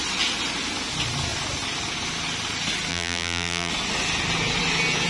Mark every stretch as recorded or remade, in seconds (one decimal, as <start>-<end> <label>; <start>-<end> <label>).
0.0-2.9 recorded; 2.9-3.7 remade; 3.7-5.1 recorded